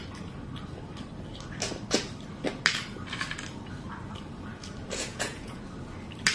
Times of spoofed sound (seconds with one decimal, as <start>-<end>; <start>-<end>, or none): 5.1-5.6